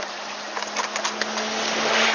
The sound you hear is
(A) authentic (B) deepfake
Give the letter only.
A